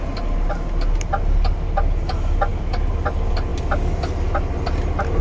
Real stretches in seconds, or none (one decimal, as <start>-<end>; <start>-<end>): 0.0-5.2